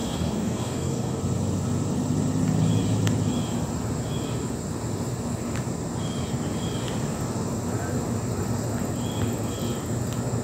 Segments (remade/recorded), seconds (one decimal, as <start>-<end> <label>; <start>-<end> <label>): 0.0-1.2 remade; 1.2-10.4 recorded